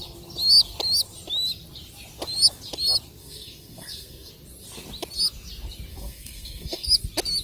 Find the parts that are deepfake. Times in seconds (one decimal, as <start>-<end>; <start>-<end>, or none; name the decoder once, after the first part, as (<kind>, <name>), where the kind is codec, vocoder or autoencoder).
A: 3.2-4.3 (codec, SNAC); 5.9-6.9